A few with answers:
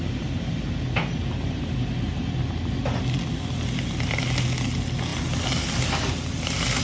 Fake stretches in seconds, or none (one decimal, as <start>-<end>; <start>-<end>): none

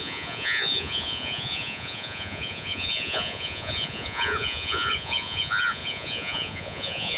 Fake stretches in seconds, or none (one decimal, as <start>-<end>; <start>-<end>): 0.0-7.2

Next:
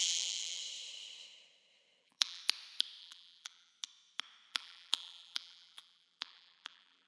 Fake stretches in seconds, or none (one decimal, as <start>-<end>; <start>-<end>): 0.0-0.6; 2.0-2.4; 3.0-3.7; 4.5-7.1